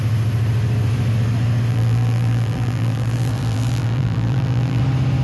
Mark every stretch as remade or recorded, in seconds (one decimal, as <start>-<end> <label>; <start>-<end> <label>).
0.0-1.7 recorded; 1.7-4.8 remade; 4.8-5.2 recorded